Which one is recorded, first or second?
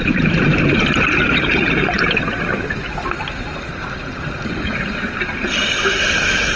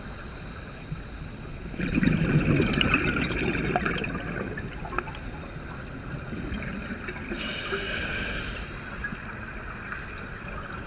second